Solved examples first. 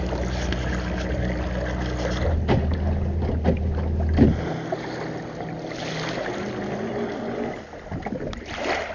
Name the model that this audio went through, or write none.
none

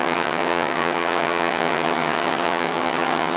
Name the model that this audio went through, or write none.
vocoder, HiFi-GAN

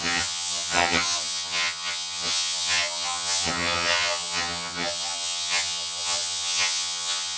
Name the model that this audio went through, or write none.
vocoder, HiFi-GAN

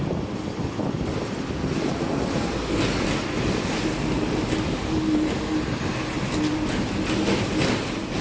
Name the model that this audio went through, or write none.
none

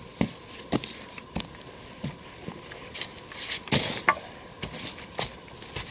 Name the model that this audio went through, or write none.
none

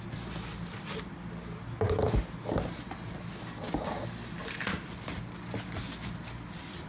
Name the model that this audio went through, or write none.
none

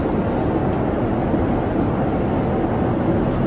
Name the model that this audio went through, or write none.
none